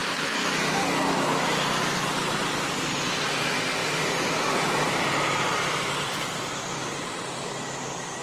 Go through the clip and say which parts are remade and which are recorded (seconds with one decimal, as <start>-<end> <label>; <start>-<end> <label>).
0.0-3.8 recorded; 3.8-8.2 remade